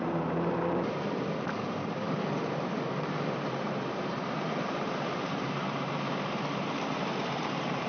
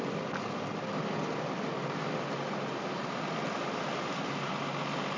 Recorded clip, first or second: second